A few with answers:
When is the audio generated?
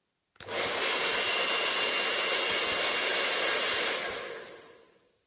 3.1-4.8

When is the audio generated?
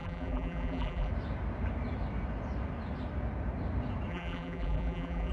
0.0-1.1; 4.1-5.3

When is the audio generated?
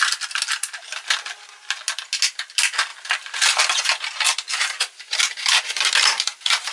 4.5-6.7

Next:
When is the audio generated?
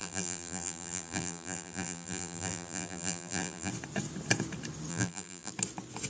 0.0-3.7; 4.9-5.5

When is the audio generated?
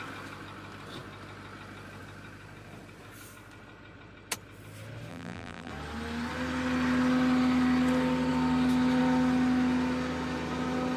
5.1-5.7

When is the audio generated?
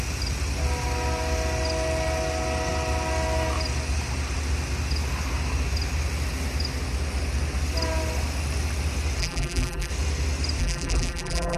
9.2-9.9; 10.6-11.6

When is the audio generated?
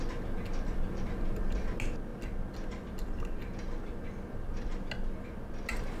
none